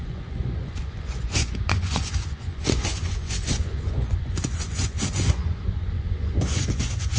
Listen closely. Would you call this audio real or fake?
fake